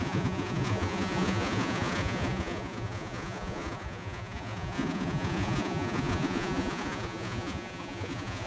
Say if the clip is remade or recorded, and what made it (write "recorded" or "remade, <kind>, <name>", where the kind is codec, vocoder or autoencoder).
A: remade, vocoder, Vocos